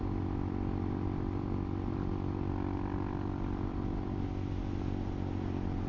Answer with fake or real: real